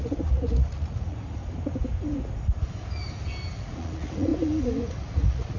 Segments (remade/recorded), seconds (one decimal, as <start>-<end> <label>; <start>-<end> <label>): 0.0-1.4 remade; 1.4-3.6 recorded; 3.6-4.3 remade; 4.3-5.0 recorded; 5.0-5.6 remade